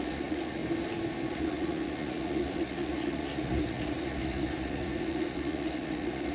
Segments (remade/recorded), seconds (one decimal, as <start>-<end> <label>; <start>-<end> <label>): 0.0-0.6 remade; 0.6-1.3 recorded; 1.3-6.3 remade